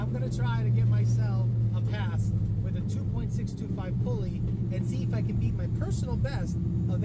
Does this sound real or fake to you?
real